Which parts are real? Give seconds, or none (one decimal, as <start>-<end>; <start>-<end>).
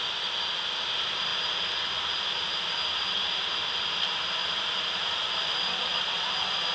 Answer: 0.0-6.7